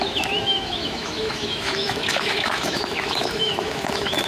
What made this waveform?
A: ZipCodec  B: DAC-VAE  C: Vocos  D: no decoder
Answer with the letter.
B